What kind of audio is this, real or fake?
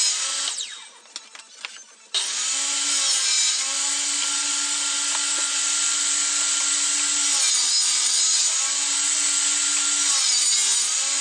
real